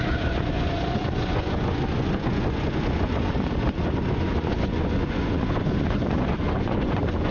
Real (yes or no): no